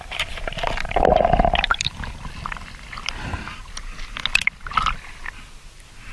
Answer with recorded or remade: recorded